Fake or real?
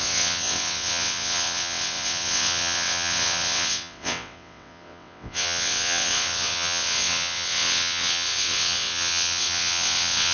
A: fake